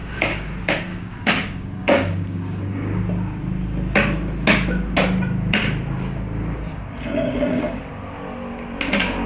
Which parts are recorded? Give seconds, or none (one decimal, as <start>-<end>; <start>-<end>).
0.5-0.9; 3.0-6.7; 7.8-9.3